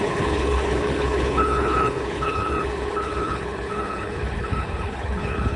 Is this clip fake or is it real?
fake